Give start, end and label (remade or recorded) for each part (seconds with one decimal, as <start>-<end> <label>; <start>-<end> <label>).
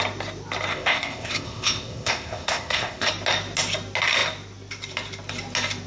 0.0-0.7 recorded; 0.7-3.1 remade; 3.1-5.9 recorded